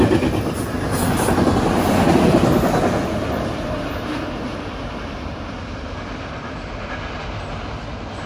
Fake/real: real